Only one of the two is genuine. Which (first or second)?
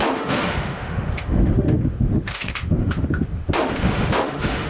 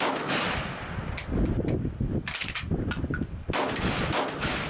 second